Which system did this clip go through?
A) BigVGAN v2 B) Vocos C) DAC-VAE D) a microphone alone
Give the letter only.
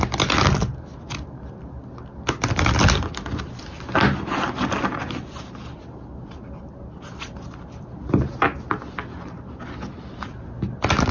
D